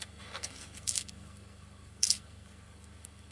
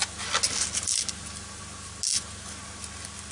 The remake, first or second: first